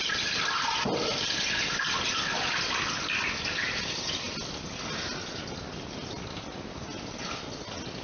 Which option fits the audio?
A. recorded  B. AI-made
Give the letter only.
A